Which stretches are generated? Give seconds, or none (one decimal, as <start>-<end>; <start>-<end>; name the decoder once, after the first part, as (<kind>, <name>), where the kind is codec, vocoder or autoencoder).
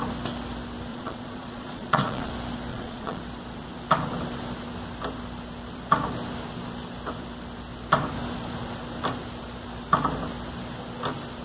0.9-2.3 (vocoder, Vocos); 2.7-3.2